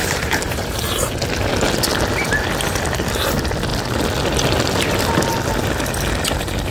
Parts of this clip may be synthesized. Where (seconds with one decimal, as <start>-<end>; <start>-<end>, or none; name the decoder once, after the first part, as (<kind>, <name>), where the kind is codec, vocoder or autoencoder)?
0.0-1.1 (vocoder, BigVGAN v2)